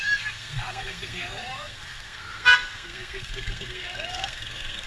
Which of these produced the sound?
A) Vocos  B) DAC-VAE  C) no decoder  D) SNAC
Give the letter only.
D